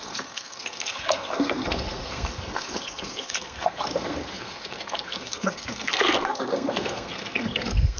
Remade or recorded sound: remade